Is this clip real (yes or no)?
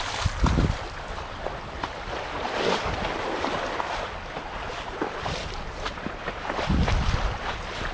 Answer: yes